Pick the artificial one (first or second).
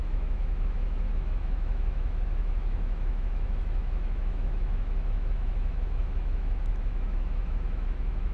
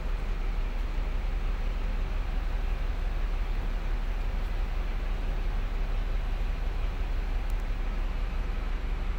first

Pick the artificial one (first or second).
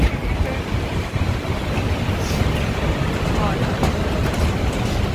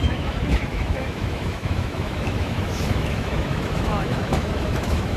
second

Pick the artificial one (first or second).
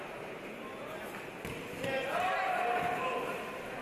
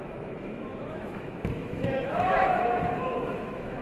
second